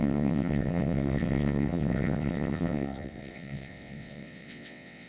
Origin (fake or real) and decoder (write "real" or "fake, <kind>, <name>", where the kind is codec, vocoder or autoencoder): fake, vocoder, WaveNeXt